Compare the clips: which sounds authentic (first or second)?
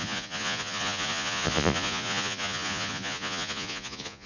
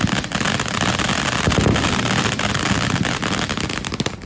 second